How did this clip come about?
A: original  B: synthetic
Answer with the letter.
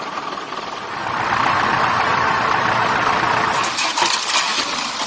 A